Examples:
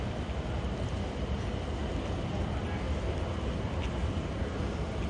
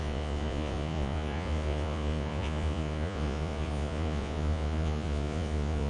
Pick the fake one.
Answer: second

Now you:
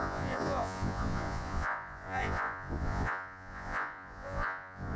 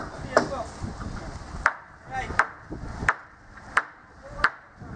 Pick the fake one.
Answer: first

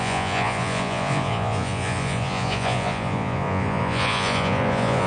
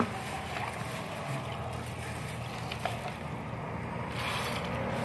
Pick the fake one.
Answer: first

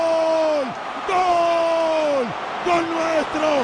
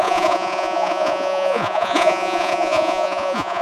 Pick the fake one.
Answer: second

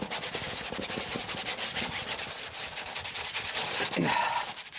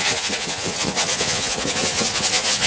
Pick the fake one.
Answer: second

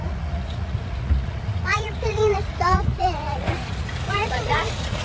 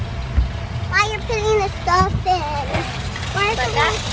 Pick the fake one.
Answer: first